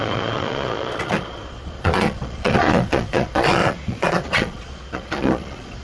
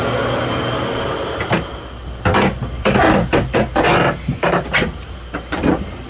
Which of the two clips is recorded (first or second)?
second